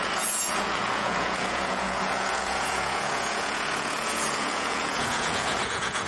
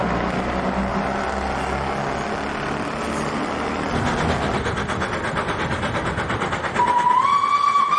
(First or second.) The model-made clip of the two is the first